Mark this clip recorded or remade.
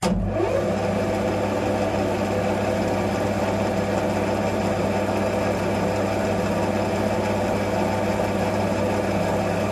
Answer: recorded